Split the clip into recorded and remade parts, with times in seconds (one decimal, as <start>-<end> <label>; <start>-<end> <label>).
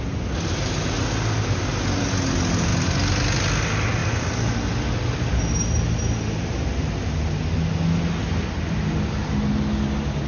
0.0-10.3 recorded